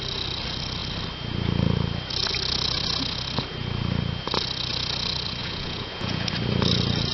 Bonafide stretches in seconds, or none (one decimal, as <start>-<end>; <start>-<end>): 0.0-5.4; 6.3-7.1